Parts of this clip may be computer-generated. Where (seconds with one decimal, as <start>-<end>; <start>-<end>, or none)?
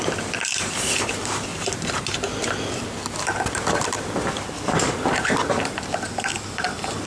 0.0-1.5; 3.8-7.1